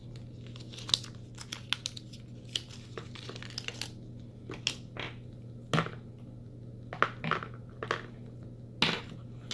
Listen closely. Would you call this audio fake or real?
real